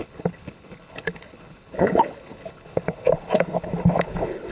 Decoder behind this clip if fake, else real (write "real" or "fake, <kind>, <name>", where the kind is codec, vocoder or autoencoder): fake, codec, HILCodec